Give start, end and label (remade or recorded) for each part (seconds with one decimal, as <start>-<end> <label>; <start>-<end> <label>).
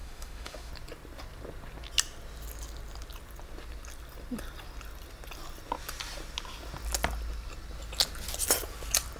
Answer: 0.0-0.7 remade; 0.7-9.2 recorded